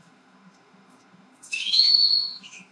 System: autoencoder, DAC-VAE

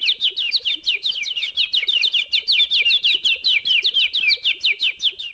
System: none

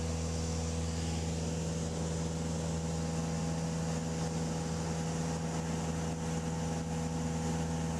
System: none